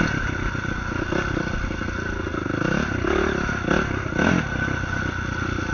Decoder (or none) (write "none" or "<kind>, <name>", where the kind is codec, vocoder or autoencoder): none